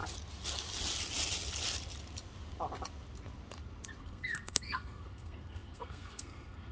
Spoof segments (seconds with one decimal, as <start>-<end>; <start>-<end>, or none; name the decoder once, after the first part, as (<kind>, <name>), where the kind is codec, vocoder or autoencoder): 4.0-6.7 (codec, SNAC)